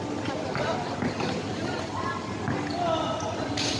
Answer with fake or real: real